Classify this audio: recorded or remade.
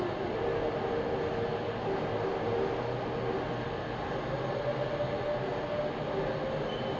recorded